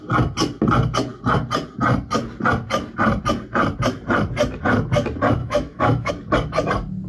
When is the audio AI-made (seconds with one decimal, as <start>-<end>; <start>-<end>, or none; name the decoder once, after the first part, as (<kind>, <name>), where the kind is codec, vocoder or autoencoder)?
5.4-6.1 (autoencoder, DAC-VAE)